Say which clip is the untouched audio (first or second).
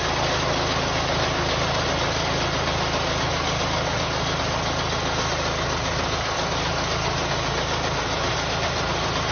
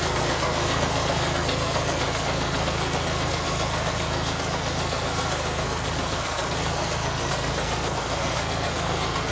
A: first